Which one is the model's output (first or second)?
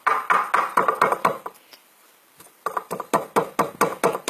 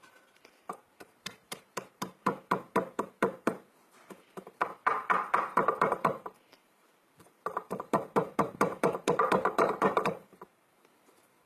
second